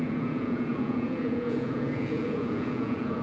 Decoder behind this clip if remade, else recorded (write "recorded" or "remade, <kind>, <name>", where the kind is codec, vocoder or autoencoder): remade, vocoder, Vocos